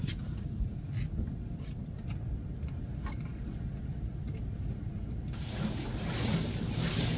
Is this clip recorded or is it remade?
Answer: recorded